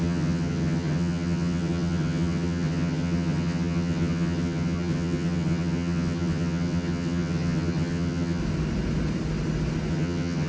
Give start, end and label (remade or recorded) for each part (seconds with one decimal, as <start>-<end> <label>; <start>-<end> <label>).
0.0-8.4 remade; 8.4-9.9 recorded; 9.9-10.5 remade